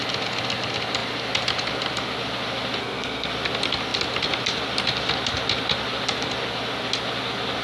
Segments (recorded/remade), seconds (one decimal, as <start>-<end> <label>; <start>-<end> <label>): 0.0-2.8 recorded; 2.8-3.3 remade; 3.3-7.6 recorded